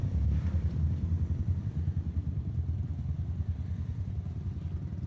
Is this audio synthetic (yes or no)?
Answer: yes